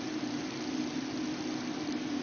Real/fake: real